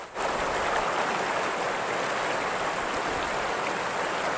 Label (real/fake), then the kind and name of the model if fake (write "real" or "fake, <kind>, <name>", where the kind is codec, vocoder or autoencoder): real